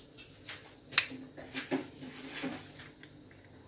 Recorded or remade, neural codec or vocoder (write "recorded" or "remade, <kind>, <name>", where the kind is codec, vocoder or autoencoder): recorded